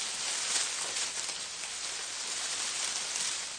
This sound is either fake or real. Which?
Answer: real